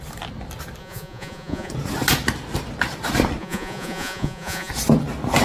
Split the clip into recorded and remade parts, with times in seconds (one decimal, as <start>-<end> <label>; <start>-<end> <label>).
0.0-0.8 recorded; 0.8-1.7 remade; 1.7-3.4 recorded; 3.4-4.7 remade; 4.7-5.4 recorded